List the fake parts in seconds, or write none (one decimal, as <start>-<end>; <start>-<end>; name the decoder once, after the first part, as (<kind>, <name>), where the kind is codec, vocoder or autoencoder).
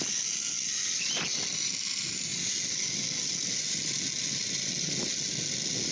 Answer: none